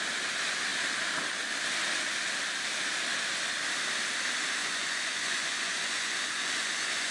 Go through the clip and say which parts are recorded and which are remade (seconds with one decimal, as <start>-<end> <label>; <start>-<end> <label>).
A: 0.0-4.6 recorded; 4.6-7.1 remade